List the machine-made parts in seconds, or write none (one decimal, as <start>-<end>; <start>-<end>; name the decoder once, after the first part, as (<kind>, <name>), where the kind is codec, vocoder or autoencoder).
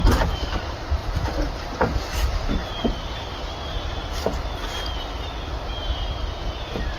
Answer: 2.6-3.1 (vocoder, BigVGAN v2)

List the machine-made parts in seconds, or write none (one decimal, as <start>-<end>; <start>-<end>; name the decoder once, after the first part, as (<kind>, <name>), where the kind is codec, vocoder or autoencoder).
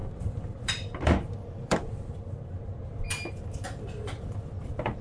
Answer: 0.0-5.0 (vocoder, BigVGAN v2)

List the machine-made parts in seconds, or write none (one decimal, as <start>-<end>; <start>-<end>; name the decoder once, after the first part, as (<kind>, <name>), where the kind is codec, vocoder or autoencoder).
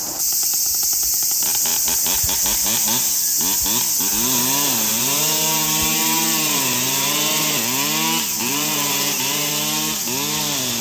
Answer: 4.9-7.6 (vocoder, BigVGAN v2); 8.4-9.5